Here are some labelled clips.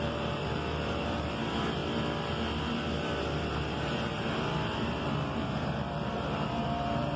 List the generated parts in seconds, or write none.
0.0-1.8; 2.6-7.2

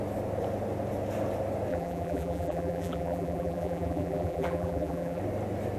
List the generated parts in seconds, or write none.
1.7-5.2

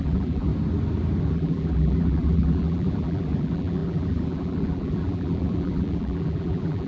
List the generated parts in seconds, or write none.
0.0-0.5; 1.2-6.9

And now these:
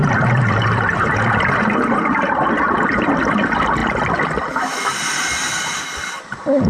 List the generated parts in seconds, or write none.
0.0-3.0